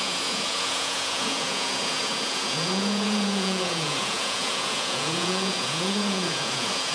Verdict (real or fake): fake